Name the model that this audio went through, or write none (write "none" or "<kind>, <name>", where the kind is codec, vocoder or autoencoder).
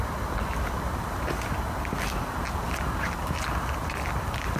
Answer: none